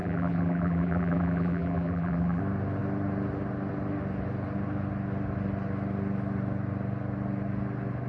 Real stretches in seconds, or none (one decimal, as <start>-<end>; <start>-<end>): 2.4-8.1